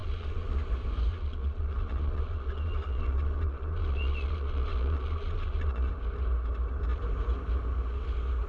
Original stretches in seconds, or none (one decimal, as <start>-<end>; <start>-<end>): 0.6-1.1; 5.9-8.5